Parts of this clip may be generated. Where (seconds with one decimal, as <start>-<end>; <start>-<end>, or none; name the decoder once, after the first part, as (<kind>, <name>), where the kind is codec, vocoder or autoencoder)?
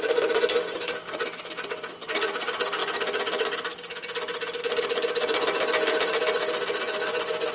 none